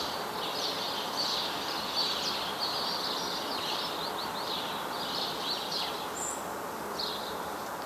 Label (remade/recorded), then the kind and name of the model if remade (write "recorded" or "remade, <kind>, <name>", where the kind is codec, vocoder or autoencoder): recorded